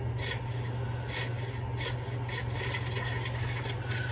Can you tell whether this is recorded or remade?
recorded